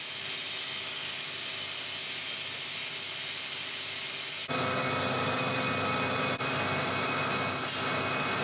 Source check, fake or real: real